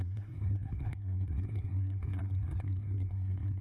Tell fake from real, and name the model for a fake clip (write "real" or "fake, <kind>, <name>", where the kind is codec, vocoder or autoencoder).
fake, codec, SNAC